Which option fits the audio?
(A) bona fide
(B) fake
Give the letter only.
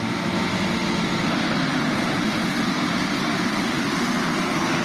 B